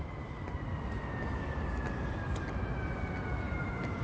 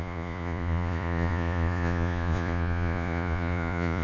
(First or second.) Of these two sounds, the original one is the first